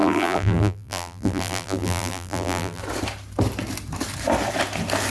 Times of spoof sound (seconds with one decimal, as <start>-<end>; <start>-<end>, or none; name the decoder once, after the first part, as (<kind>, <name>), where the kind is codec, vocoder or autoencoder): 0.0-2.8 (vocoder, BigVGAN v2)